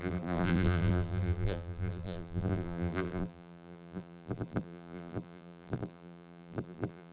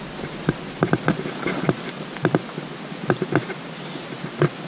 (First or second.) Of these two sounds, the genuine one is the second